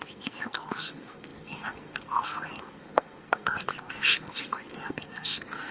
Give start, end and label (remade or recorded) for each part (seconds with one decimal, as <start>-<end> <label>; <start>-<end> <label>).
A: 0.0-5.7 remade